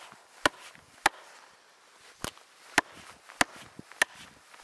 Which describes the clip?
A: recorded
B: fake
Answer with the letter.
A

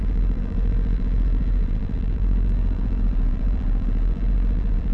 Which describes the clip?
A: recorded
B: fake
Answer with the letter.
B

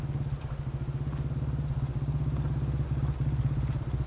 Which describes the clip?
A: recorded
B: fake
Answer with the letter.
A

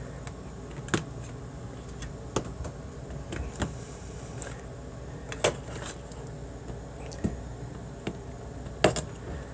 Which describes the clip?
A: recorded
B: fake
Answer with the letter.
A